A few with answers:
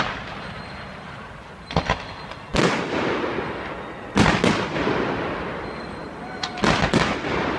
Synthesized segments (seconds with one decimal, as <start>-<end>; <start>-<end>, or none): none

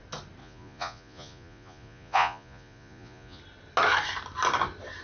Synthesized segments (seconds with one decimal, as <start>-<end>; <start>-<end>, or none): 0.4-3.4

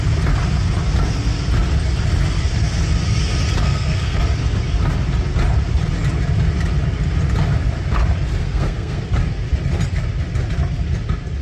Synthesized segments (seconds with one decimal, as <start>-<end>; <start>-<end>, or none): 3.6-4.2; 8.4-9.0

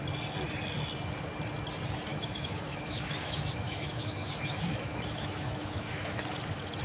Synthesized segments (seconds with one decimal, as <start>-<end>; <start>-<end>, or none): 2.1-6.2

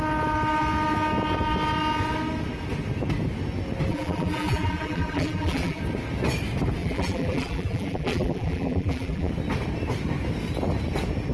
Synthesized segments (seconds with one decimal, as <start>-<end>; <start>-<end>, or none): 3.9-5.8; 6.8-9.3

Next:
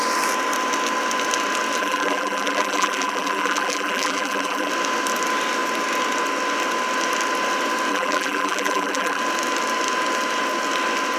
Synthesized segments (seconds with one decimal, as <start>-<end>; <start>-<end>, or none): 1.8-4.7; 7.9-9.2